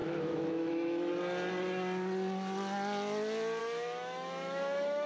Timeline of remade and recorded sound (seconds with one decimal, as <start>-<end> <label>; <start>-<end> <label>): 0.0-1.1 remade; 1.1-3.6 recorded; 3.6-5.1 remade